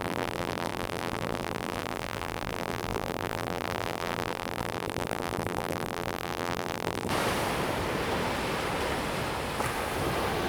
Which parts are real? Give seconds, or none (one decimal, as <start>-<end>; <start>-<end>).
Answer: 7.1-10.5